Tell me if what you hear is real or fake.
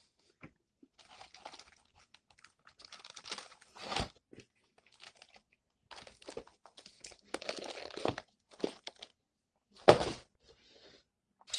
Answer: real